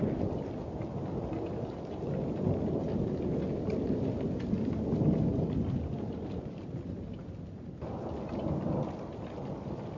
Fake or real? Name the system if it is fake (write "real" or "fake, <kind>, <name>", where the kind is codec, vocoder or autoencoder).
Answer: real